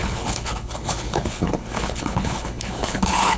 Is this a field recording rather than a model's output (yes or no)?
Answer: no